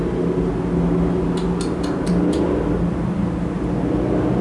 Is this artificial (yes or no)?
no